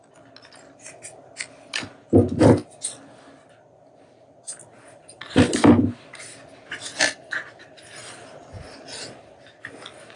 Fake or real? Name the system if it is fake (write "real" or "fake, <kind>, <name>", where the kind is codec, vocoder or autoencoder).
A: real